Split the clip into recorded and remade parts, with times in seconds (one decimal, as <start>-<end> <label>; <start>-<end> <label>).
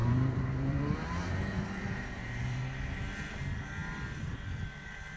0.0-2.6 remade; 2.6-5.2 recorded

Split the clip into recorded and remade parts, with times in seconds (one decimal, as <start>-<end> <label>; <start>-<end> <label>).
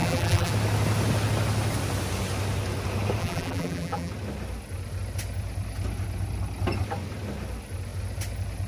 0.0-0.5 remade; 0.5-3.2 recorded; 3.2-4.1 remade; 4.1-8.7 recorded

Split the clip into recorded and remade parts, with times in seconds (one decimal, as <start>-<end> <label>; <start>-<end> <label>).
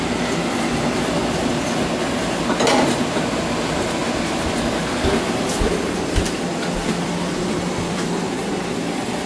0.0-4.0 recorded; 4.0-5.6 remade; 5.6-6.8 recorded; 6.8-8.1 remade; 8.1-9.3 recorded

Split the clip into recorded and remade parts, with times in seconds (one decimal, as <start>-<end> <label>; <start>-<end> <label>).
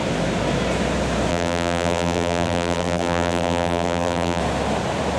0.0-1.3 recorded; 1.3-4.4 remade; 4.4-5.2 recorded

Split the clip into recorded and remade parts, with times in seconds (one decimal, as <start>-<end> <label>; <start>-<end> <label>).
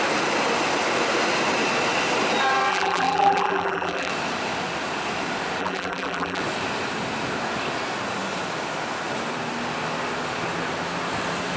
0.0-2.7 recorded; 2.7-4.1 remade; 4.1-5.6 recorded; 5.6-6.4 remade; 6.4-11.6 recorded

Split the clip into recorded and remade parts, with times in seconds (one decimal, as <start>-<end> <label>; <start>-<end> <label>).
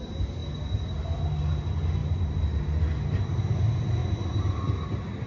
0.0-4.0 recorded; 4.0-4.7 remade; 4.7-5.3 recorded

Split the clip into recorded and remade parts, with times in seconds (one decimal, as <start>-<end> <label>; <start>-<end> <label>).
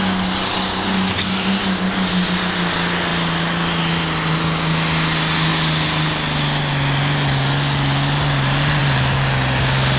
0.0-10.0 recorded